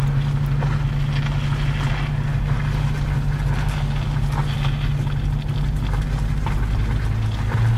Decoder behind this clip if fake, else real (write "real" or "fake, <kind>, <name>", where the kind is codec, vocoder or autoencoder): real